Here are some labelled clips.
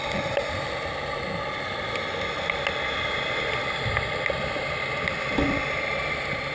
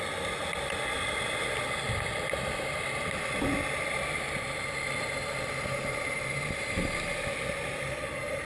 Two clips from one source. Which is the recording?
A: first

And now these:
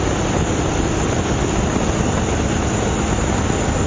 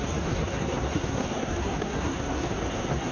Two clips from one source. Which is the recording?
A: first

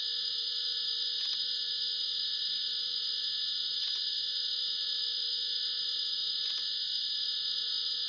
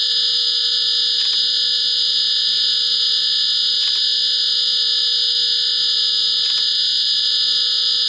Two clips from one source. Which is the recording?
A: second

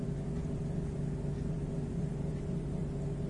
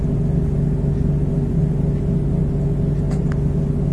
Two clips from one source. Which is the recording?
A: second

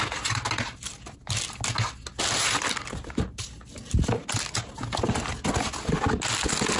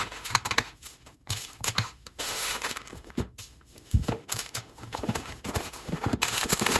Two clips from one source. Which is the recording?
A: first